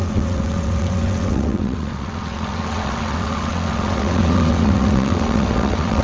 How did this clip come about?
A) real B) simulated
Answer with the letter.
B